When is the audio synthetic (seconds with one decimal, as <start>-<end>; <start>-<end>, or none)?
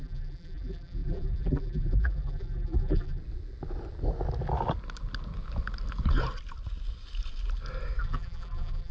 0.0-3.2; 8.0-8.9